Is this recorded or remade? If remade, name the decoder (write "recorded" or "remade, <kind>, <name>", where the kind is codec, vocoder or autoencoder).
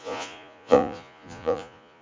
remade, vocoder, Vocos